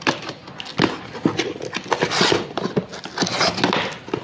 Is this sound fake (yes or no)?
no